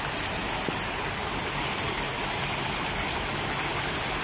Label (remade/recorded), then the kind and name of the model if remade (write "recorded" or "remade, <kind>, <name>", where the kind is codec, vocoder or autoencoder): recorded